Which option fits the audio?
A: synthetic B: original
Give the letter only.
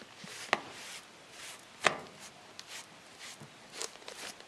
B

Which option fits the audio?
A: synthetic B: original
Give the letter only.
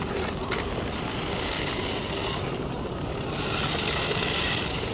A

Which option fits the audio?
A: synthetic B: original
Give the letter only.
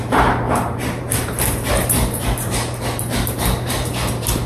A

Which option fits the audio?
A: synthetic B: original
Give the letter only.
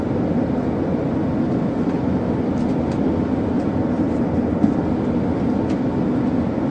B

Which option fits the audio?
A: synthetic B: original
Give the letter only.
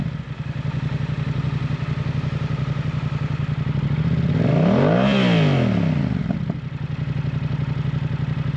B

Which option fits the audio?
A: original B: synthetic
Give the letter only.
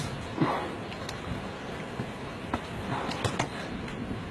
A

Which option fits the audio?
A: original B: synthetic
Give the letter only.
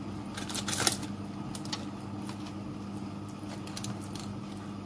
A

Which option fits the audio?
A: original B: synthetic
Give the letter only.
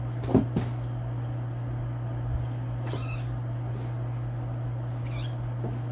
A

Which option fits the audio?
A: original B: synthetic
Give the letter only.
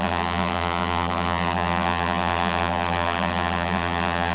B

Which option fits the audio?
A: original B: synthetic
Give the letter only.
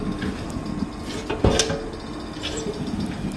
A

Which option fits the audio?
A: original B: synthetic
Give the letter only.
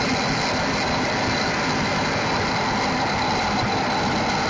A